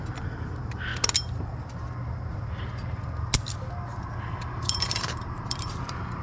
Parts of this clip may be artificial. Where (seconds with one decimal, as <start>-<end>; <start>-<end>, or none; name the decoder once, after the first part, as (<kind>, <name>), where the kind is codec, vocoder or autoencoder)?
0.0-0.9 (vocoder, BigVGAN v2); 4.6-6.2